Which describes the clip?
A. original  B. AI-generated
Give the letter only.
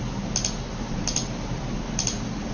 A